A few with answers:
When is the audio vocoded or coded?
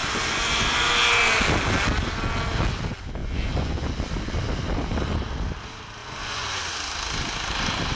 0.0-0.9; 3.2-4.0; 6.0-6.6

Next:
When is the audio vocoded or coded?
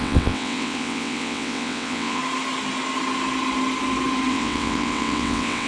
0.0-2.2; 4.3-5.7